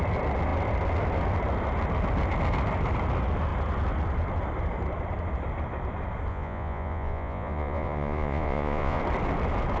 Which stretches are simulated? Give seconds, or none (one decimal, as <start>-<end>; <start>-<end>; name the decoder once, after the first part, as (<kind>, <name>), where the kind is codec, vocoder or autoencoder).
6.3-9.0 (vocoder, Vocos)